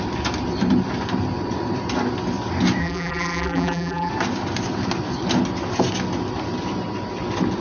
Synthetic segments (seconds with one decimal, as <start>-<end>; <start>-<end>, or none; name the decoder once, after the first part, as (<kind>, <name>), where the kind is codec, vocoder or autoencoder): 2.8-4.1 (vocoder, BigVGAN v2)